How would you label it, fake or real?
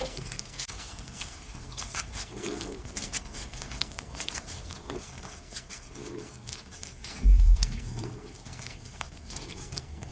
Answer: fake